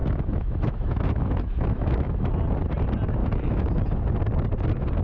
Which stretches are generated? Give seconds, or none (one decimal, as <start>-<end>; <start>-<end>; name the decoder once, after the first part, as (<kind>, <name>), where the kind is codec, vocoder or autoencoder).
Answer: 0.0-2.3 (autoencoder, DAC-VAE); 3.2-3.8